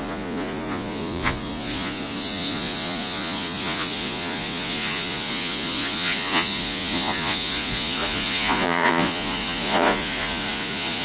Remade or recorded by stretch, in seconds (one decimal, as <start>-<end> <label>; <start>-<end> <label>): 0.0-11.0 remade